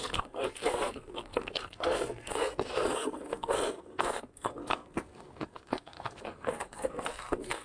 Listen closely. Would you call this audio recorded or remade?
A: remade